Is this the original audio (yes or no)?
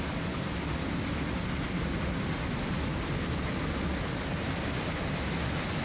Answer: yes